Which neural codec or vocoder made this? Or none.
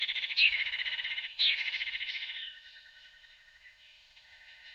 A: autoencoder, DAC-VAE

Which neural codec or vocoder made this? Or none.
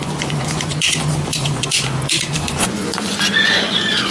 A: vocoder, Vocos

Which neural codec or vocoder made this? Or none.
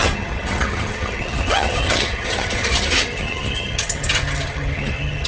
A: vocoder, HiFi-GAN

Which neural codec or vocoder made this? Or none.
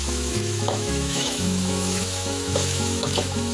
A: autoencoder, DAC-VAE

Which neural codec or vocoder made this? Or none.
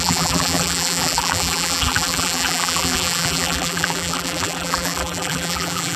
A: vocoder, BigVGAN v2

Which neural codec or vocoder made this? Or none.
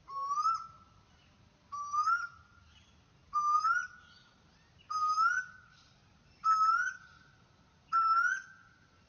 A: none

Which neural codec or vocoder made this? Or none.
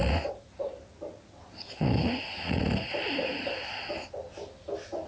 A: none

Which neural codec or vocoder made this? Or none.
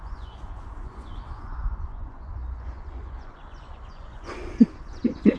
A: vocoder, Vocos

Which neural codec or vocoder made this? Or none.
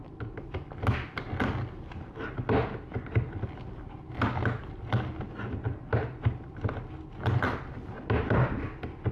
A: none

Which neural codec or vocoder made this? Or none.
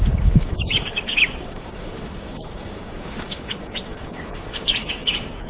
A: codec, DAC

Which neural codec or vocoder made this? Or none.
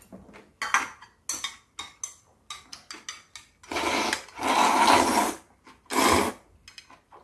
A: none